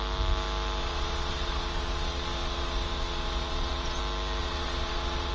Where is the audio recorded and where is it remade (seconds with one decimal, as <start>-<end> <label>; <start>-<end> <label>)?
0.0-0.8 recorded; 0.8-4.0 remade; 4.0-4.4 recorded; 4.4-5.3 remade